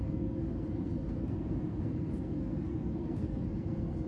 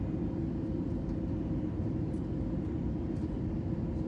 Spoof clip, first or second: first